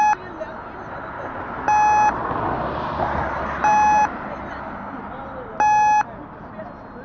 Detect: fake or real real